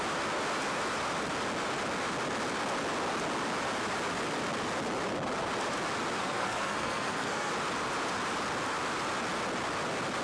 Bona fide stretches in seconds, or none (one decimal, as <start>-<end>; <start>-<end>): 0.0-6.2; 7.5-10.2